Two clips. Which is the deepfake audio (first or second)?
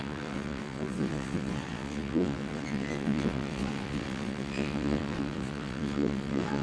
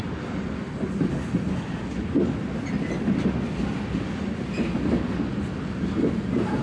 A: first